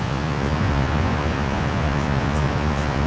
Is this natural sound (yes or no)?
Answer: no